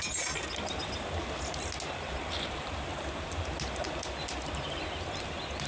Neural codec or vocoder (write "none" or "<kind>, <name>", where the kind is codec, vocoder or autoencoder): none